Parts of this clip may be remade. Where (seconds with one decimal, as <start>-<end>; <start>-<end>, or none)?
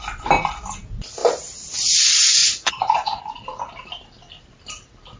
2.4-3.2